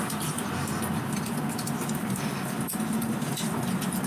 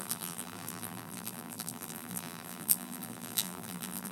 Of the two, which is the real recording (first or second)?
first